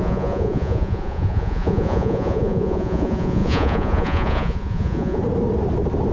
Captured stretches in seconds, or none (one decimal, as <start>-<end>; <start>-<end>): 5.2-6.1